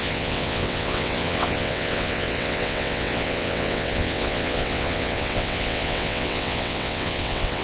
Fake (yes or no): yes